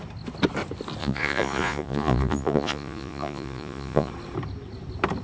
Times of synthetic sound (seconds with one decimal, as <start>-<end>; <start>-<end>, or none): 1.0-4.1